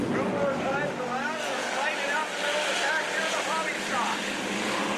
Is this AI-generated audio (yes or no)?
no